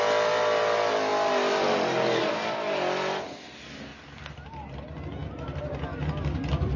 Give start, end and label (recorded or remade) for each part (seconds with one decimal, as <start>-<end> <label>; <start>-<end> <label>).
0.0-6.8 recorded